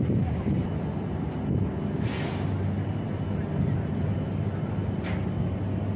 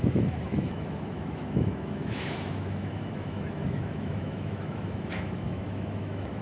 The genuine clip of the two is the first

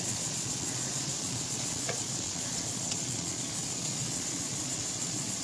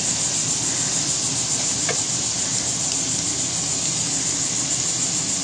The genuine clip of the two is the second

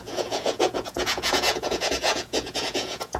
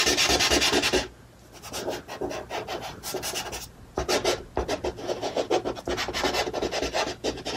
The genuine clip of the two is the second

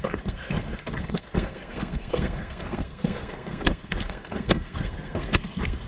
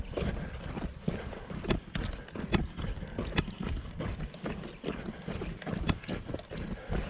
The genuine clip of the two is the second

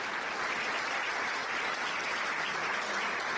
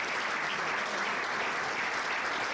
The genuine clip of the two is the first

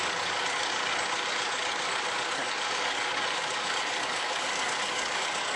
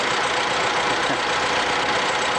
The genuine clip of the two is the second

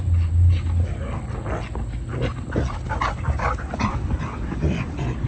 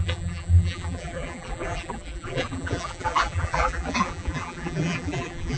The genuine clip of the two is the first